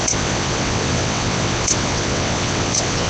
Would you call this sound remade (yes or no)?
yes